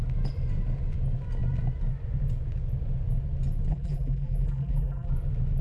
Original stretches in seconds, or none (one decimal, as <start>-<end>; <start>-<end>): 0.0-3.7; 5.1-5.6